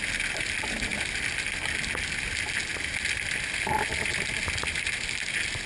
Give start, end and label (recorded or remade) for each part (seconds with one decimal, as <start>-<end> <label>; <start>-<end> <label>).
0.0-5.7 recorded